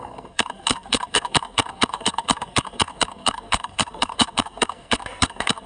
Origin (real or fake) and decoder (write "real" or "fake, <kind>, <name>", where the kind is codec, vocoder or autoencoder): fake, codec, SNAC